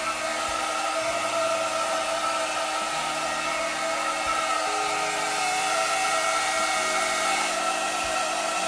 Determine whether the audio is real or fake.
real